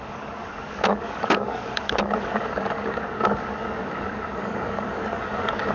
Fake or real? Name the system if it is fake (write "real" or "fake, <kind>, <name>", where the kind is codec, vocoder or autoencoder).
fake, codec, DAC